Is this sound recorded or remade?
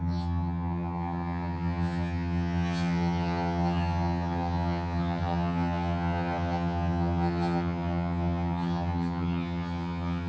remade